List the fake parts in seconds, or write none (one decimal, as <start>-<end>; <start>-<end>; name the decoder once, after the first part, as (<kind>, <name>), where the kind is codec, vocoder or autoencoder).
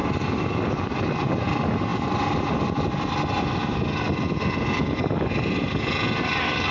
none